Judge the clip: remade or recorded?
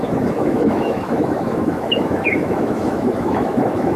remade